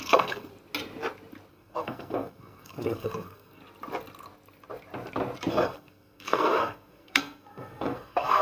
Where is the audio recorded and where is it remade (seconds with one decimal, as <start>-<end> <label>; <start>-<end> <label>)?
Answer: 0.0-0.5 remade; 0.5-1.5 recorded; 1.5-3.6 remade; 3.6-5.5 recorded; 5.5-8.4 remade